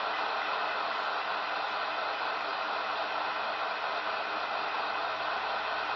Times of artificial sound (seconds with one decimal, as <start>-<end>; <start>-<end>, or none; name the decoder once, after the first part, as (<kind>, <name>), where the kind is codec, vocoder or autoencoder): none